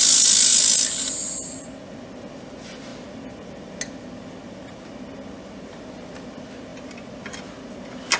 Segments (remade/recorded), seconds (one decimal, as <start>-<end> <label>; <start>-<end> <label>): 0.0-8.2 recorded